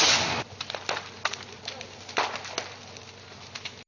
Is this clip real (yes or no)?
yes